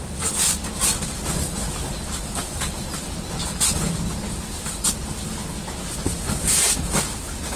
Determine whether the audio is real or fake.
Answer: real